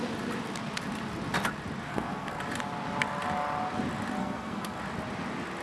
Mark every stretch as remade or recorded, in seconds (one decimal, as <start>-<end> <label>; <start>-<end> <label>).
0.0-1.9 recorded; 1.9-2.4 remade; 2.4-4.2 recorded; 4.2-4.8 remade; 4.8-5.6 recorded